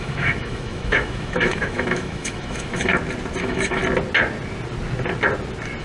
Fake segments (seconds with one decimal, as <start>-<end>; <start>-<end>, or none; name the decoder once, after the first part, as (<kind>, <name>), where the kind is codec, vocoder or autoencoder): 0.0-2.9 (autoencoder, DAC-VAE); 3.4-3.8